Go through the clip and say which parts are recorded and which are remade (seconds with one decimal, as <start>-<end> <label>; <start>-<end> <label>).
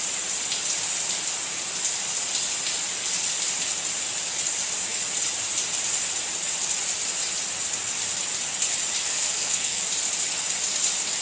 0.0-9.1 recorded; 9.1-9.8 remade; 9.8-11.2 recorded